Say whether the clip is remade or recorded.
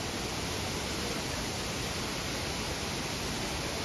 recorded